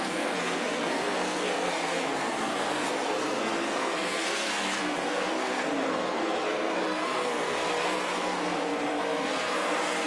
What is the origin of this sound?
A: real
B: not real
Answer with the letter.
B